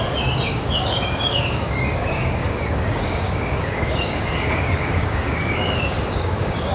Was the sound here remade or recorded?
remade